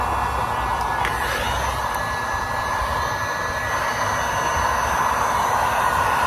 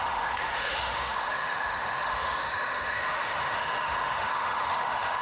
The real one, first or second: first